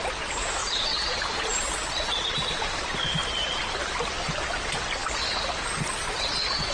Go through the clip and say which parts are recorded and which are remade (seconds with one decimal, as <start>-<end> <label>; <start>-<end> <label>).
0.0-0.6 recorded; 0.6-1.7 remade; 1.7-6.7 recorded